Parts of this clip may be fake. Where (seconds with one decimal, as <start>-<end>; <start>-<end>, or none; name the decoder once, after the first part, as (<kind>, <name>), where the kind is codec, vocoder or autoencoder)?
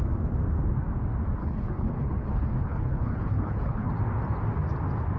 1.4-3.9 (codec, HILCodec)